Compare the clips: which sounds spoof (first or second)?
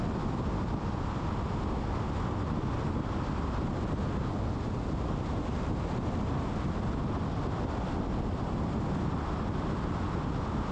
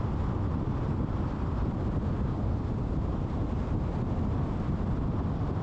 second